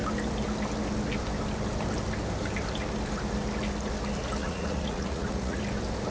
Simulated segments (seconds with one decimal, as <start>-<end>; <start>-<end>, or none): 4.4-5.6